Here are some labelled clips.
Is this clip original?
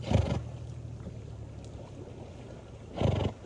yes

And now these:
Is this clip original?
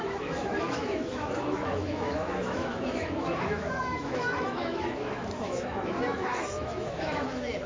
no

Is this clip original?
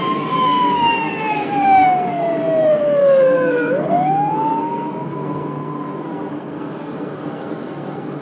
no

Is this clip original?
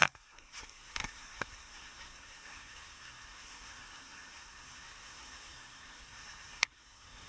no